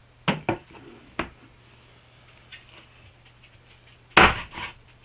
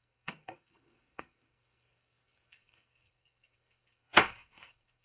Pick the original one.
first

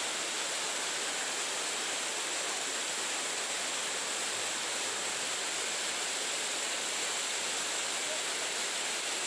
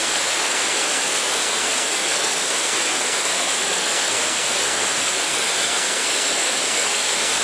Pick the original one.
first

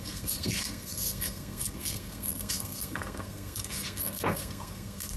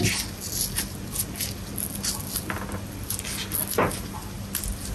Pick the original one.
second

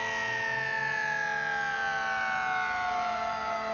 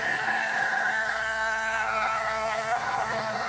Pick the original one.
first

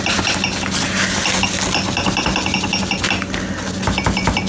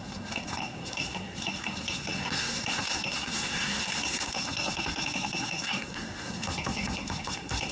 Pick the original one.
first